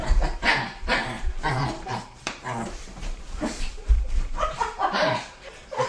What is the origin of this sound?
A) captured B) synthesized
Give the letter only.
B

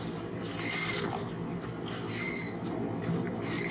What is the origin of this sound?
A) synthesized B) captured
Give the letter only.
B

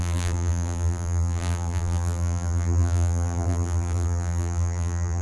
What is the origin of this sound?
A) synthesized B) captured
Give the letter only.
A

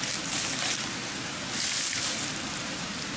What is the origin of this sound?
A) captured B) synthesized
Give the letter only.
A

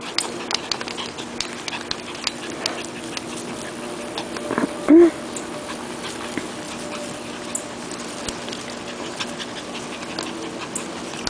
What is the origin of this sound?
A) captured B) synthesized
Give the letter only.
A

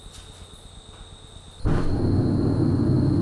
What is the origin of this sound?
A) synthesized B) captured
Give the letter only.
B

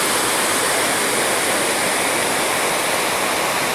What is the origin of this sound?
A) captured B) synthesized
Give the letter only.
A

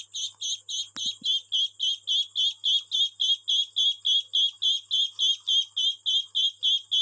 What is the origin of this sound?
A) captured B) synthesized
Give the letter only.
A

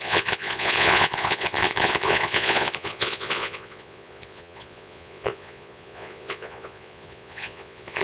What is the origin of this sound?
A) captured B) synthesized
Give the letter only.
B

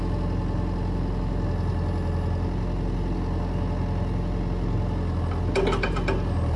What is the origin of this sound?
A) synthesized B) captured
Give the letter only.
B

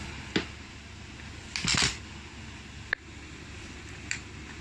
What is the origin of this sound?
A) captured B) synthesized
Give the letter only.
A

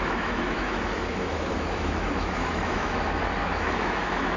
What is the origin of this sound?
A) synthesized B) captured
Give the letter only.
A